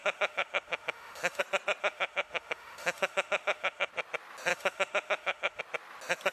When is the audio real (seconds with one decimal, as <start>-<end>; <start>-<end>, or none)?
1.4-1.8; 3.9-4.5; 5.6-6.3